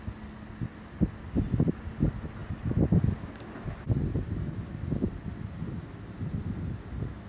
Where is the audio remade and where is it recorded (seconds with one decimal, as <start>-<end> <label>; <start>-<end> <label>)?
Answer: 0.0-7.3 recorded

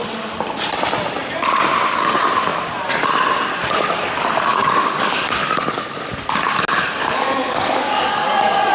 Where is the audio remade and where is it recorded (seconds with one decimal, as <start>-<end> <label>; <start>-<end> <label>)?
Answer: 0.0-4.5 recorded; 4.5-6.1 remade; 6.1-7.0 recorded; 7.0-8.7 remade

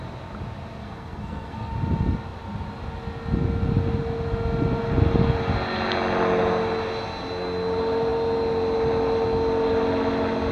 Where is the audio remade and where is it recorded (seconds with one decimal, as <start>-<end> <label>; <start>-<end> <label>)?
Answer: 0.0-0.8 recorded; 0.8-1.7 remade; 1.7-10.5 recorded

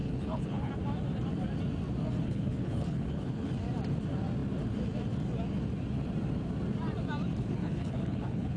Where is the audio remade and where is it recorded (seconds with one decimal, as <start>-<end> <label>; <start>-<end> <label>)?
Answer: 0.0-0.7 remade; 0.7-2.2 recorded; 2.2-3.5 remade; 3.5-7.6 recorded; 7.6-8.6 remade